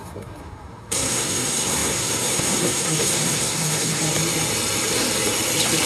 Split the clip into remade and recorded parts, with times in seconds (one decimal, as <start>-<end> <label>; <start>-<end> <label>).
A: 0.0-4.0 remade; 4.0-5.9 recorded